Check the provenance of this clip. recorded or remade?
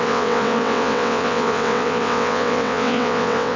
remade